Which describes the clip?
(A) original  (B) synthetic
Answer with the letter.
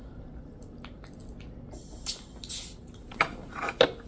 A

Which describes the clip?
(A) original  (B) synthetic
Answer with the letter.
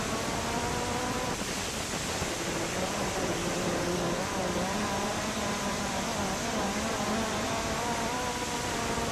B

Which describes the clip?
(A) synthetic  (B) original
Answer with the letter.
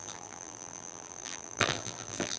A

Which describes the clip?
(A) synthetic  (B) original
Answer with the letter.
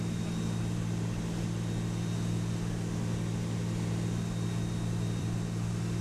A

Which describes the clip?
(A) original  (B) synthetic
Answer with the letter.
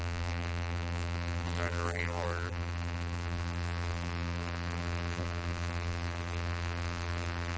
B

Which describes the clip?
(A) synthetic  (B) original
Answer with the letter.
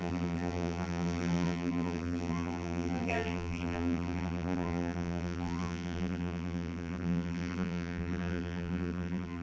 A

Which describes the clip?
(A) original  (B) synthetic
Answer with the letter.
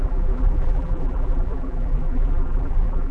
B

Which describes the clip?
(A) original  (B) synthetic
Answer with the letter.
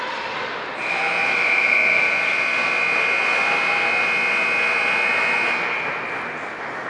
A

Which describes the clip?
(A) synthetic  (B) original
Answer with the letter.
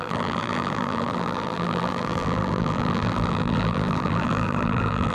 A